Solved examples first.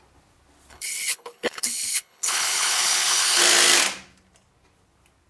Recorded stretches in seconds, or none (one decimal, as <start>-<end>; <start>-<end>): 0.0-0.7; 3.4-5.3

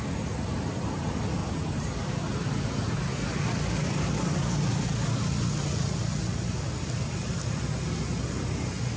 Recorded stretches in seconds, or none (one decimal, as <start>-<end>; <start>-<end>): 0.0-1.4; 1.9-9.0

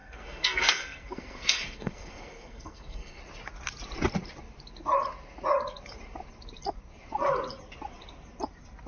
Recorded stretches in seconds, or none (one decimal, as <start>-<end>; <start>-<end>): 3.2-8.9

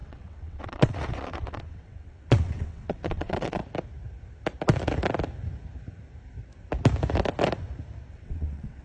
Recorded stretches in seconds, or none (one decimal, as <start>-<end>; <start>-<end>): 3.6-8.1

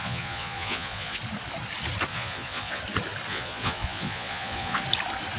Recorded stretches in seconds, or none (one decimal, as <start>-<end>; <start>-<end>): 1.2-2.1; 2.8-3.3; 4.8-5.4

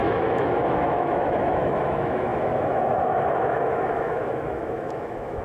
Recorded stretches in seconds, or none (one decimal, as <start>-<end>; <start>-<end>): none

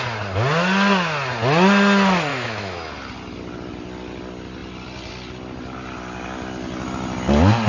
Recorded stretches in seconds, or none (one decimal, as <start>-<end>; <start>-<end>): 0.0-2.3; 2.9-7.7

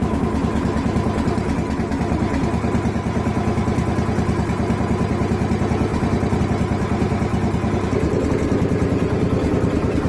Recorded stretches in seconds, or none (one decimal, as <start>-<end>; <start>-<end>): 0.0-10.1